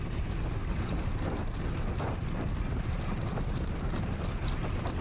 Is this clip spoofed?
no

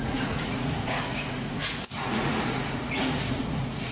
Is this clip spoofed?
yes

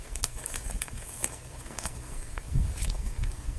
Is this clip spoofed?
yes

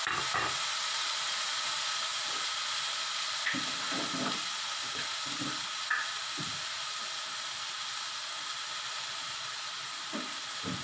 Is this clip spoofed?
no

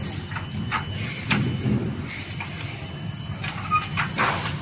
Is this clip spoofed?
no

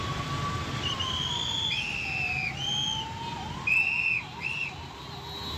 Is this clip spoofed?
no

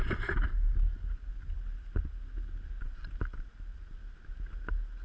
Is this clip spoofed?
no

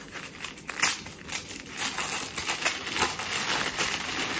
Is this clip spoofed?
no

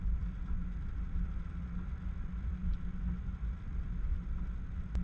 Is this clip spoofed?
no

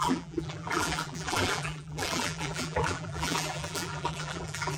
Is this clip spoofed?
yes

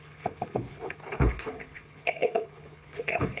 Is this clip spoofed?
yes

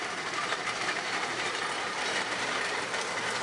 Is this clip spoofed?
yes